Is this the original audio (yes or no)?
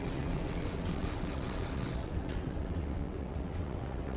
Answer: no